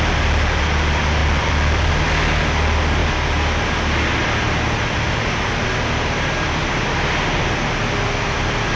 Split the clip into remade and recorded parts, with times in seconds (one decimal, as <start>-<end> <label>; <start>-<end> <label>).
0.0-1.2 recorded; 1.2-1.9 remade; 1.9-8.8 recorded